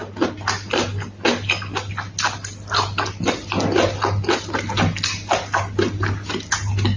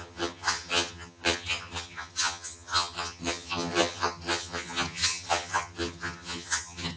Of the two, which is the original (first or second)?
first